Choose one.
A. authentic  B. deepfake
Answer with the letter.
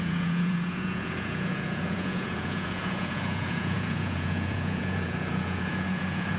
B